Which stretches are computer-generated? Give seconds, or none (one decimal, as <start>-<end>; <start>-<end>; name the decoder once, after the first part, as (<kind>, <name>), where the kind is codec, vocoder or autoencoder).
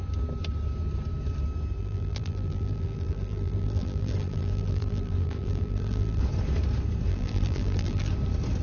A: 1.8-6.2 (vocoder, BigVGAN v2); 7.1-8.1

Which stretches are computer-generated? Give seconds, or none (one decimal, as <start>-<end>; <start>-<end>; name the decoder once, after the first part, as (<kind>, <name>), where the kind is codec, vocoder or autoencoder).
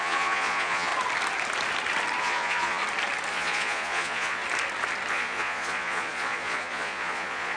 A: 0.0-0.9 (vocoder, Vocos); 2.2-2.8; 3.3-4.4; 5.1-7.6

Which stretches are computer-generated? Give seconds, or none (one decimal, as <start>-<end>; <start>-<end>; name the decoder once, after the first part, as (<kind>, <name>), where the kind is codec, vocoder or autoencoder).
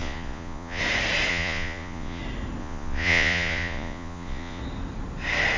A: 0.0-0.8 (vocoder, Vocos); 1.3-2.2; 2.6-4.6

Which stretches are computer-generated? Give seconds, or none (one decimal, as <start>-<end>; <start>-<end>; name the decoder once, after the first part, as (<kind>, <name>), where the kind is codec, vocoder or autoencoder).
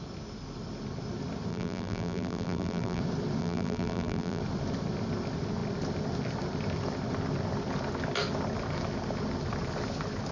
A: 1.5-3.0 (vocoder, BigVGAN v2); 3.4-4.4